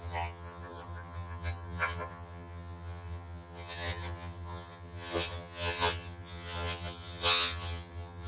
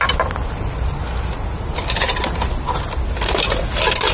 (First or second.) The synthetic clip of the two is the first